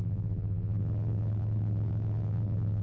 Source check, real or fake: fake